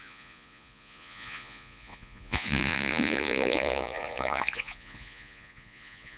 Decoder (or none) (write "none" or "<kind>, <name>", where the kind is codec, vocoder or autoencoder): vocoder, Vocos